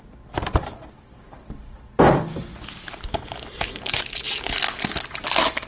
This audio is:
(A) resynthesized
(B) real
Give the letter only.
B